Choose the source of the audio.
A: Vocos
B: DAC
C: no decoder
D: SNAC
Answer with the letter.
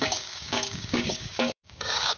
B